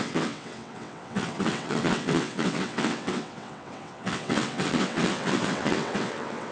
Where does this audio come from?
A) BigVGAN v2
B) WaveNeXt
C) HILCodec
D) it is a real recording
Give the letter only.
B